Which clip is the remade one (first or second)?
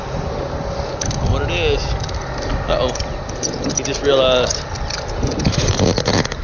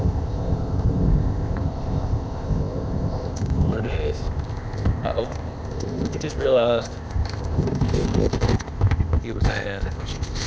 second